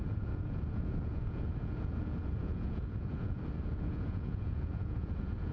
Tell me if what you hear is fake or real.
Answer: fake